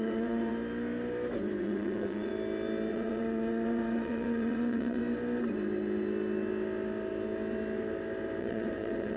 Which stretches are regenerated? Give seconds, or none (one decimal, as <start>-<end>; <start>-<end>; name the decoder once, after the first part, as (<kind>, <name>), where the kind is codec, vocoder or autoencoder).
0.0-0.5 (vocoder, WaveNeXt); 1.6-2.3; 2.9-5.0; 8.4-9.2